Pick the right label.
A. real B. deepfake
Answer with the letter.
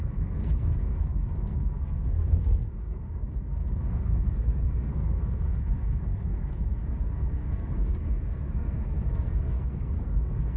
B